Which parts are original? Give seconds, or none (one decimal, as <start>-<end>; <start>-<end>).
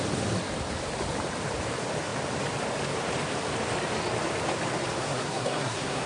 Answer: 0.0-5.0